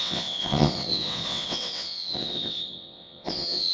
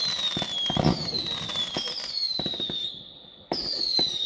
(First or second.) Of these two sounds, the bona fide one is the second